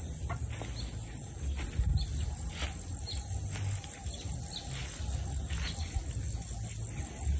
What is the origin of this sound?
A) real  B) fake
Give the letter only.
A